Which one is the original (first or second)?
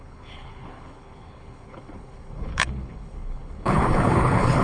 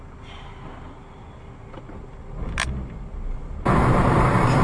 second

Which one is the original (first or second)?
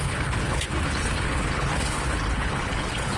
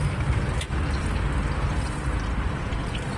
second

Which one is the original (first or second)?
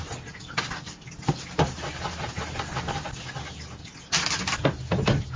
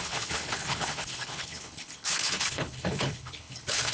first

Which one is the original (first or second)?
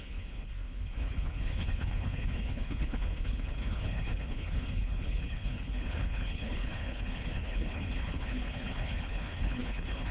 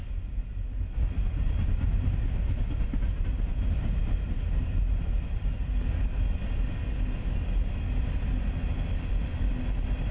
second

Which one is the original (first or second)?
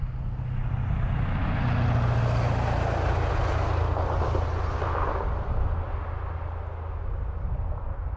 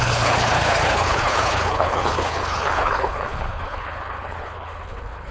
first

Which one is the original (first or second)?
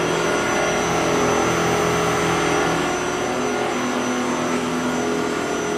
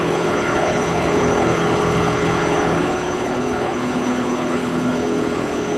first